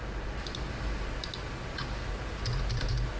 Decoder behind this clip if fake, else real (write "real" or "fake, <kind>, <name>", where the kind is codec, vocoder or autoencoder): real